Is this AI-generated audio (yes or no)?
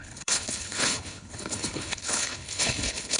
yes